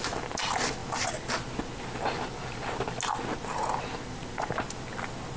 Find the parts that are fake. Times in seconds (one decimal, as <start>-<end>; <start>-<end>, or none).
none